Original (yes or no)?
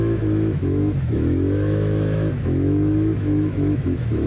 no